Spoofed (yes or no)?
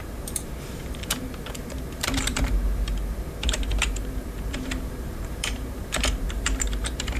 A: yes